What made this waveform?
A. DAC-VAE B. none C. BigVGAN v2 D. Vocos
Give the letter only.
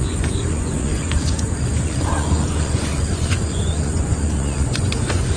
D